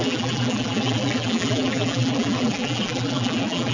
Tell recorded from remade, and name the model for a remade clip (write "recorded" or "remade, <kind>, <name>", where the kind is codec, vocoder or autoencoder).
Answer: remade, vocoder, BigVGAN v2